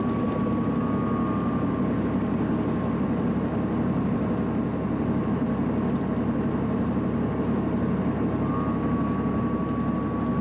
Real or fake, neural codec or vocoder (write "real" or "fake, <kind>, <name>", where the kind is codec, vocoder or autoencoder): real